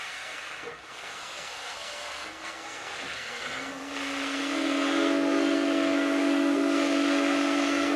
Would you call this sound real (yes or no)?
no